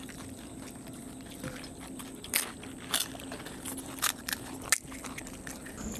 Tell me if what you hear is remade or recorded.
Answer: recorded